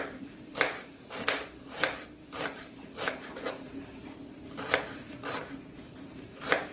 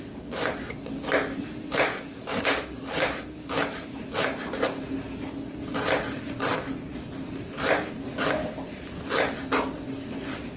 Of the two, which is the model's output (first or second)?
first